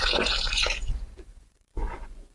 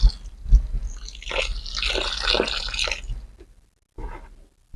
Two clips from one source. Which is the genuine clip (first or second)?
second